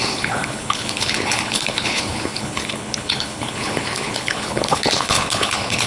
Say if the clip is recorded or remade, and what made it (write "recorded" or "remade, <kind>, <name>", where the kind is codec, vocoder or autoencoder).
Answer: remade, codec, HILCodec